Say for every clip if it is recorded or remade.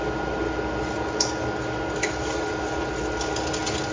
recorded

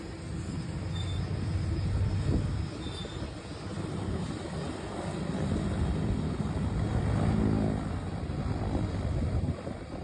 recorded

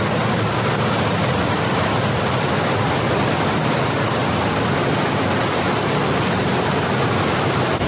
recorded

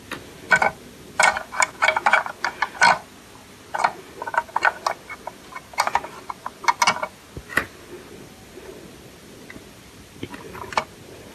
recorded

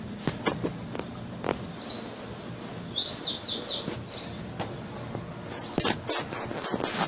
recorded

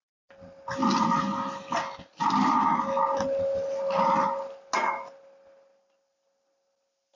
recorded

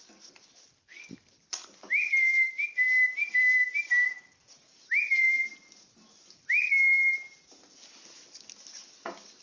recorded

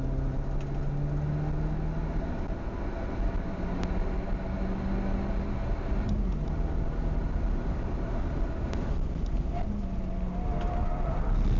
recorded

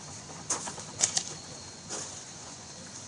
remade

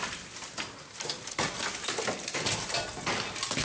recorded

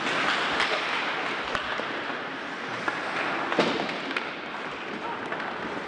recorded